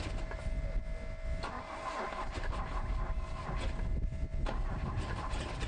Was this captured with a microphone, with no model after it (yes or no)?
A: yes